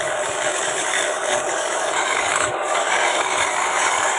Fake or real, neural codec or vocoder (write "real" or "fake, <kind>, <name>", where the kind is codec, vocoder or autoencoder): fake, codec, DAC